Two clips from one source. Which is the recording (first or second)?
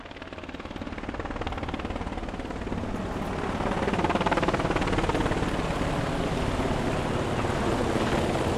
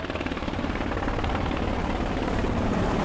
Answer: first